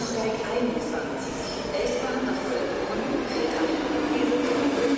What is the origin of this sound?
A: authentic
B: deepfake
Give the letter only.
A